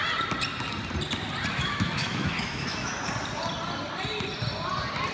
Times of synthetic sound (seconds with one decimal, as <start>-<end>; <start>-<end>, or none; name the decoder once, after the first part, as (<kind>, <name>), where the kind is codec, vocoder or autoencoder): 1.5-2.9 (autoencoder, DAC-VAE)